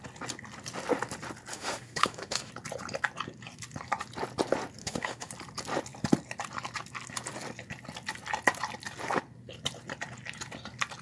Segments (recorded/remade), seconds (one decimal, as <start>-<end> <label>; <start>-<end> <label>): 0.0-1.5 recorded; 1.5-2.5 remade; 2.5-4.8 recorded; 4.8-5.3 remade; 5.3-11.0 recorded